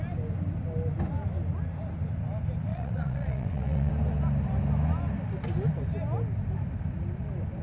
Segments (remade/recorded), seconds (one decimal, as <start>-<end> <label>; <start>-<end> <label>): 0.0-2.7 recorded; 2.7-3.9 remade; 3.9-7.6 recorded